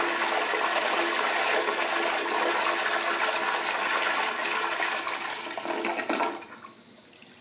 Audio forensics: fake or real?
real